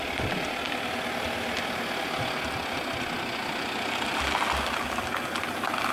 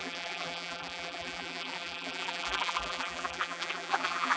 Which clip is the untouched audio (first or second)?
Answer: first